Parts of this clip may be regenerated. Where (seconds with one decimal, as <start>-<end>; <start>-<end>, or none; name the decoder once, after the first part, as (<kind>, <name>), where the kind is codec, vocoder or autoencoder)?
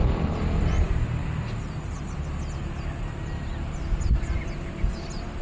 none